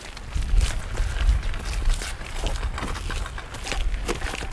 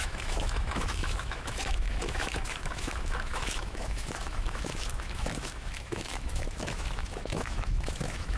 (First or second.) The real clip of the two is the first